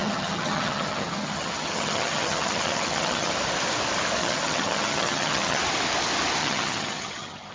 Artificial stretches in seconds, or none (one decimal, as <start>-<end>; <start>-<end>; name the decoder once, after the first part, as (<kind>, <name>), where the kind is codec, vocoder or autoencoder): 0.0-3.3 (vocoder, HiFi-GAN); 4.2-5.6; 6.4-7.5